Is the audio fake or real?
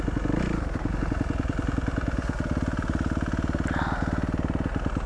real